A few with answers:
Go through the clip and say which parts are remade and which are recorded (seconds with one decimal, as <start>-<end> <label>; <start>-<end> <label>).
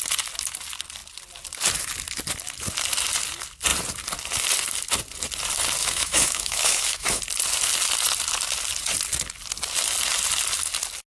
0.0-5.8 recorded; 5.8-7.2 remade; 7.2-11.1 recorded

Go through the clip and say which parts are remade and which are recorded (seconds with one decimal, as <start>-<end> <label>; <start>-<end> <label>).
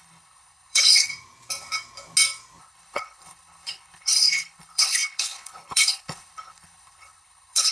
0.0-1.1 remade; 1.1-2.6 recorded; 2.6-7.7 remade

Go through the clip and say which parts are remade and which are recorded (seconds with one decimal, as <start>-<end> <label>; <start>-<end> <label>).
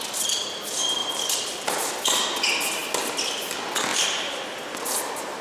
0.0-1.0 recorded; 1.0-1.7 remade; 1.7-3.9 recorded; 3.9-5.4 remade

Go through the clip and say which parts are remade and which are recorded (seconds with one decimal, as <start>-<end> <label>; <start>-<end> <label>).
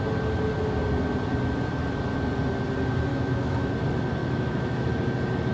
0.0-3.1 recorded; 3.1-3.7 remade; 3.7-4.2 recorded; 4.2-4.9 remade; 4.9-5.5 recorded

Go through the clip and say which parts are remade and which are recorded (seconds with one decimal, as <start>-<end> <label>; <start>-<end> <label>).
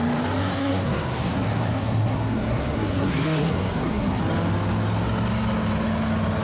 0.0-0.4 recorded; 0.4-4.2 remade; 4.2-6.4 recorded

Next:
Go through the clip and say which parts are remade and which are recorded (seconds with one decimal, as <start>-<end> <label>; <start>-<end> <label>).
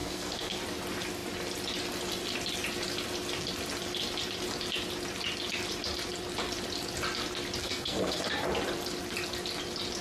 0.0-0.6 remade; 0.6-7.6 recorded; 7.6-8.2 remade; 8.2-10.0 recorded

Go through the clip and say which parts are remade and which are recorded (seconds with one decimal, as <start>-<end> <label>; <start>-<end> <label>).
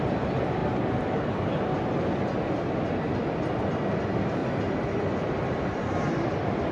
0.0-0.6 recorded; 0.6-2.0 remade; 2.0-4.4 recorded; 4.4-6.7 remade